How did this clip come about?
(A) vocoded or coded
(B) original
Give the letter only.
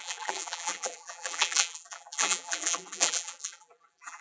A